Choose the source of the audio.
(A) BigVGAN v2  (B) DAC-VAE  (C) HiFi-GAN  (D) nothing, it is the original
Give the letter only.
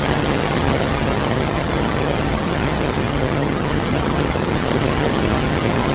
C